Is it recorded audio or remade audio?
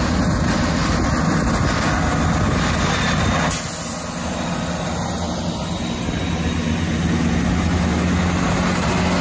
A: recorded